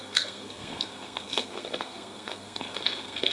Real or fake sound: fake